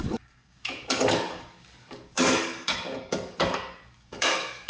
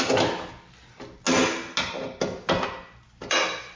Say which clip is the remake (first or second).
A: first